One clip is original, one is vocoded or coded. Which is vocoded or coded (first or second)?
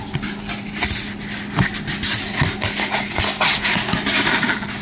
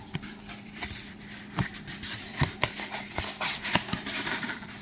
second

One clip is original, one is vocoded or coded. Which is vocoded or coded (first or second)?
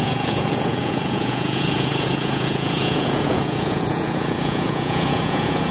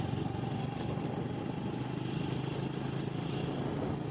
first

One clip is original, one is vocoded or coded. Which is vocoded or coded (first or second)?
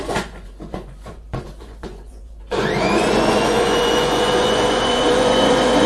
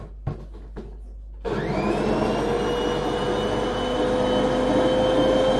first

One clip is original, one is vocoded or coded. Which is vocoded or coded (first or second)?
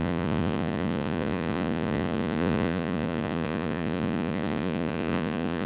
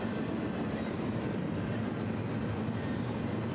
first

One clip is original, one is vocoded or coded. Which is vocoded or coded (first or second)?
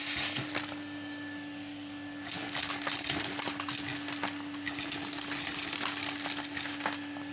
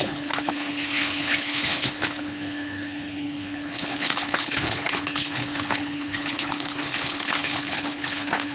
second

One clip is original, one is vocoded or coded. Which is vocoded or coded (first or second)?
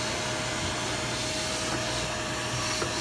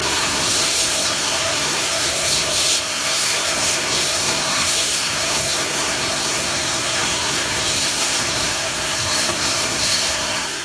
second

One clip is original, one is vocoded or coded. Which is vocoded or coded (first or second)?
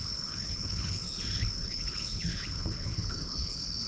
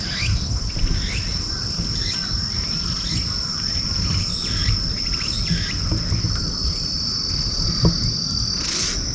first